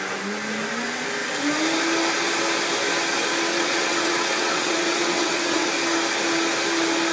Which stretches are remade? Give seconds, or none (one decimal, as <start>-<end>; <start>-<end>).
3.5-5.7